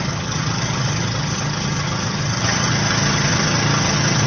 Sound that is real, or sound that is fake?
fake